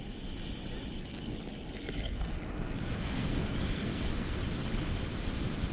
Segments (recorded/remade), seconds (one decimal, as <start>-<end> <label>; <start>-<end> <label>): 0.0-1.0 recorded; 1.0-4.4 remade; 4.4-5.7 recorded